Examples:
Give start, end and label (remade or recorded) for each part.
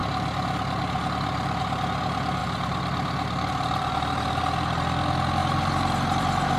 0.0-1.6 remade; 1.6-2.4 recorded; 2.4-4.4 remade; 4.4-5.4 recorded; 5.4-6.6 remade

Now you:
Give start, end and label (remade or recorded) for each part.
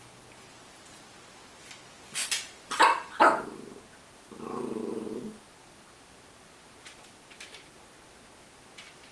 0.0-2.2 recorded; 2.2-3.3 remade; 3.3-9.1 recorded